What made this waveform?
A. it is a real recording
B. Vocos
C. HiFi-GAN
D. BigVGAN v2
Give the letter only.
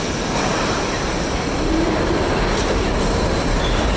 D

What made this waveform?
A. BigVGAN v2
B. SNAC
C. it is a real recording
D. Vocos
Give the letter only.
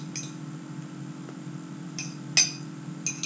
C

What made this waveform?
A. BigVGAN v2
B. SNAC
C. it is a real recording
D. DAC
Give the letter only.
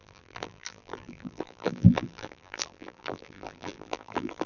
A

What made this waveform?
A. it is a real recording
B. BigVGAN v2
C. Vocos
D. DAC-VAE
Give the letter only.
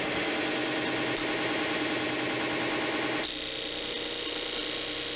A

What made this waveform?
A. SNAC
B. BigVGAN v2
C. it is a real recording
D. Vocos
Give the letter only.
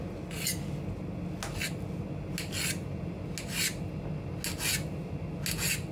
C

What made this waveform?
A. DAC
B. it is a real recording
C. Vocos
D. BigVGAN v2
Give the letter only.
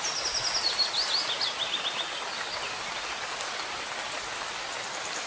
B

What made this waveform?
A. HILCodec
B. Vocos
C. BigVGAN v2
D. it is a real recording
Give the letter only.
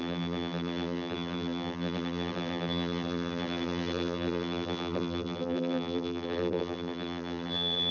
C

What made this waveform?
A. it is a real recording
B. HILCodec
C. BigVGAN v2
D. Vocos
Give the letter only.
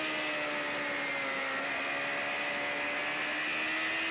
A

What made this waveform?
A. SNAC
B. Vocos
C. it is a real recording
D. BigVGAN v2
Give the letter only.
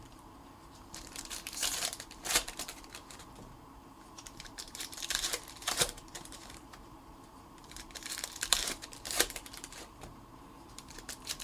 D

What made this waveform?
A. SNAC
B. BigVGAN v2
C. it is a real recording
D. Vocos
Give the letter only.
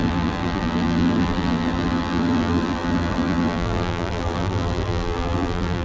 B